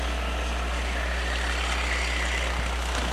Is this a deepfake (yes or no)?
no